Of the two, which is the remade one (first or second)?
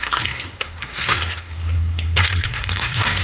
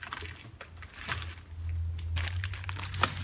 first